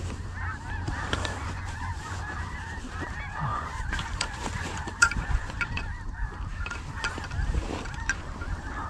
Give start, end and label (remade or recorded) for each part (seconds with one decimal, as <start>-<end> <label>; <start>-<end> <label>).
0.0-1.4 recorded; 1.4-2.2 remade; 2.2-3.5 recorded; 3.5-5.8 remade; 5.8-8.9 recorded